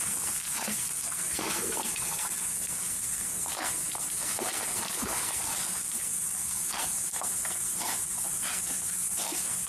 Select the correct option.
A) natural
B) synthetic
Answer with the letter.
B